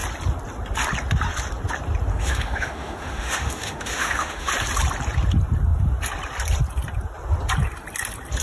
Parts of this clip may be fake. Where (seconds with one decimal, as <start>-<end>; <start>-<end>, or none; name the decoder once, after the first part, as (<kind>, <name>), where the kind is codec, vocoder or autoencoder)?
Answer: 2.1-4.5 (autoencoder, DAC-VAE)